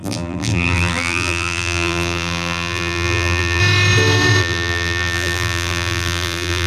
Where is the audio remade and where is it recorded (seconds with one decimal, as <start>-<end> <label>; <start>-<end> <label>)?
0.0-3.6 remade; 3.6-4.4 recorded; 4.4-6.7 remade